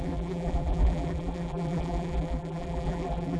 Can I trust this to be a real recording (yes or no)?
no